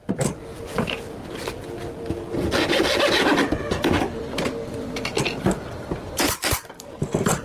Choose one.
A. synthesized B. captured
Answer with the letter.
B